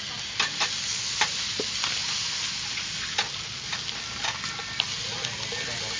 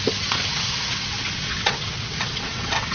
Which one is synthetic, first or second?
second